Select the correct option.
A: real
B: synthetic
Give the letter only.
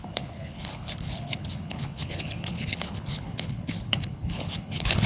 B